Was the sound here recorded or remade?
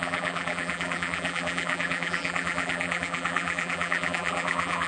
remade